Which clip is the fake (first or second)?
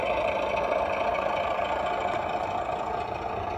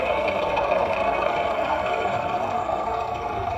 second